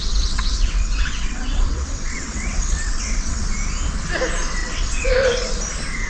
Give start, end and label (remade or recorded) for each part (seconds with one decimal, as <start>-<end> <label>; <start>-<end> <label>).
0.0-3.4 remade; 3.4-4.6 recorded; 4.6-5.1 remade; 5.1-6.1 recorded

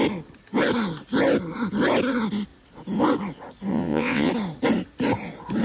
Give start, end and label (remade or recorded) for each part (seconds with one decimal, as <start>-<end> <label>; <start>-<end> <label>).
0.0-3.7 recorded; 3.7-4.3 remade; 4.3-5.6 recorded

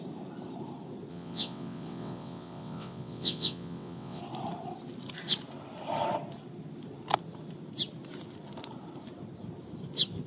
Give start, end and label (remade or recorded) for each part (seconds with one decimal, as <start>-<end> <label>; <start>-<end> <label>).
0.0-1.1 recorded; 1.1-4.2 remade; 4.2-10.3 recorded